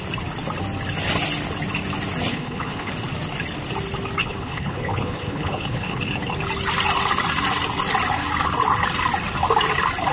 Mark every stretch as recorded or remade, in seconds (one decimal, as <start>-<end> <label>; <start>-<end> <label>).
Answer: 0.0-2.3 recorded; 2.3-2.9 remade; 2.9-4.2 recorded; 4.2-6.0 remade; 6.0-10.1 recorded